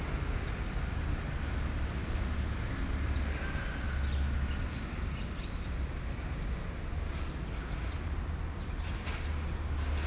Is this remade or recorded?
recorded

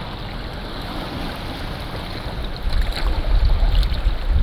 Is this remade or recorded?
recorded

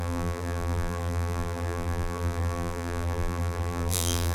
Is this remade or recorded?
remade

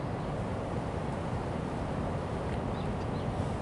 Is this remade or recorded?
recorded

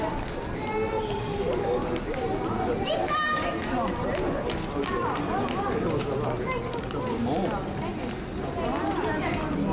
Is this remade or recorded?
recorded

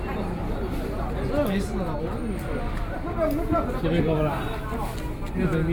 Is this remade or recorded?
recorded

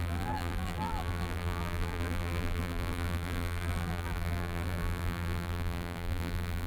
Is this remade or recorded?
remade